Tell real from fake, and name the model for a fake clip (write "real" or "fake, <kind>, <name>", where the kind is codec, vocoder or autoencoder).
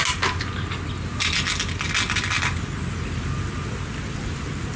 real